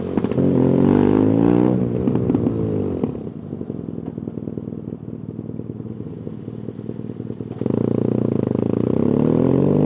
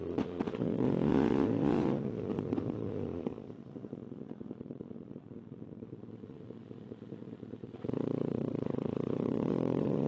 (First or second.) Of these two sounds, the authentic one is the first